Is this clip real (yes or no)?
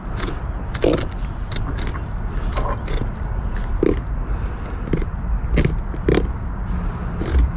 yes